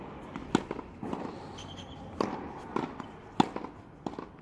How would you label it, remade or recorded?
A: recorded